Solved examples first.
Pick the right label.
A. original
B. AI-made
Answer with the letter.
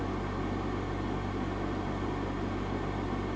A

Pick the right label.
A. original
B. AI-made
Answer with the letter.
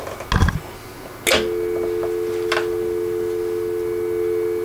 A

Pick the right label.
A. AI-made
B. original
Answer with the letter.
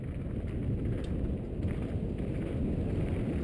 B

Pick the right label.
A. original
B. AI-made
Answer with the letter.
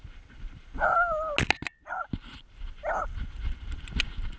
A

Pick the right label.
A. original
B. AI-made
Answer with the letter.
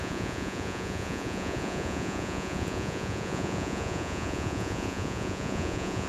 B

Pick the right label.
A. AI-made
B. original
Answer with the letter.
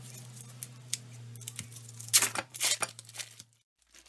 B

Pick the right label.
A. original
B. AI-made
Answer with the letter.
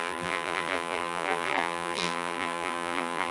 B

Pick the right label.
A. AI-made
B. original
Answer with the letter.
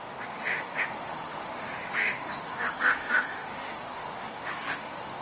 A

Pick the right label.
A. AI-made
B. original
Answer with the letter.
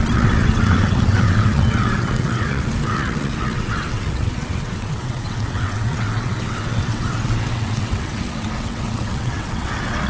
A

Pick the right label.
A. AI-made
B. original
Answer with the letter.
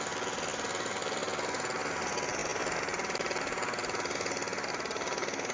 B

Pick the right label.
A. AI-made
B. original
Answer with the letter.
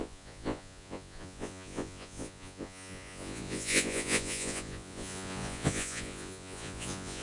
A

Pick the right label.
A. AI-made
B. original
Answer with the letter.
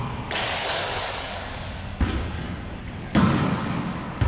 A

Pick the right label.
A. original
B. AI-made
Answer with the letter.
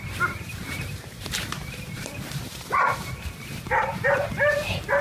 B